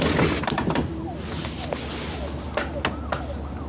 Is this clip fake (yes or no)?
no